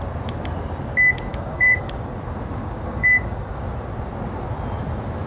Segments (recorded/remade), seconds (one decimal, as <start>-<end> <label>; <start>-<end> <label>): 0.0-1.3 recorded; 1.3-2.1 remade; 2.1-2.6 recorded; 2.6-3.6 remade; 3.6-5.3 recorded